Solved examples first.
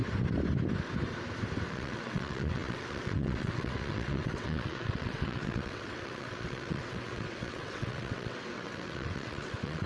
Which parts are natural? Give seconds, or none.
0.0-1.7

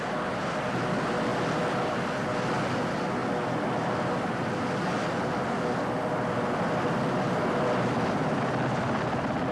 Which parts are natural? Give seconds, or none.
0.0-9.5

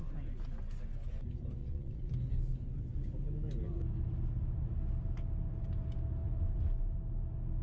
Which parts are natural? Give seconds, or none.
0.0-1.6; 2.1-7.6

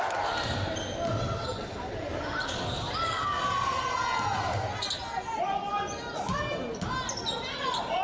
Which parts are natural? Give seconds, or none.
0.0-8.0